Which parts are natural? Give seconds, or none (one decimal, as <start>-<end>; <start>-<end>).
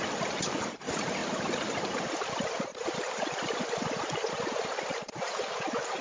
0.0-1.2; 2.3-2.7